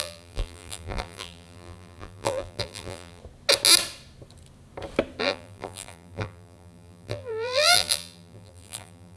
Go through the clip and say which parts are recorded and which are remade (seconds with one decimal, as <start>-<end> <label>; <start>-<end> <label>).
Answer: 0.0-3.2 remade; 3.2-5.2 recorded; 5.2-9.2 remade